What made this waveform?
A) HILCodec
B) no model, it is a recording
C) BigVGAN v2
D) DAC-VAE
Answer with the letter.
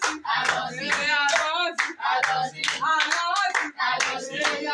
B